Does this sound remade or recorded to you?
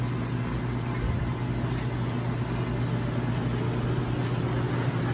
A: recorded